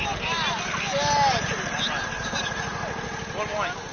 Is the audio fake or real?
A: real